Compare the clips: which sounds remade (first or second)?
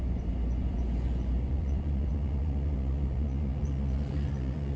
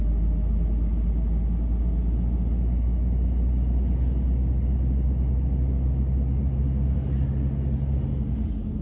first